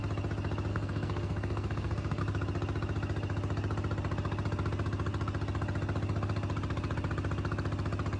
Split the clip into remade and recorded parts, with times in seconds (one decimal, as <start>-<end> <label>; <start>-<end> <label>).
0.0-0.7 recorded; 0.7-2.2 remade; 2.2-8.2 recorded